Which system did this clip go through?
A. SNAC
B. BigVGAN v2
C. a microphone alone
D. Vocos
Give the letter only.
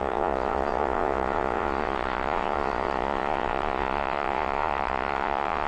D